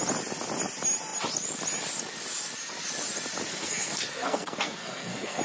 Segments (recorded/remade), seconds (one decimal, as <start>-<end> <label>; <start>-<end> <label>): 0.0-3.5 recorded; 3.5-5.4 remade